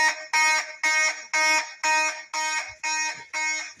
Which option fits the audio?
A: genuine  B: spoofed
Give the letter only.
A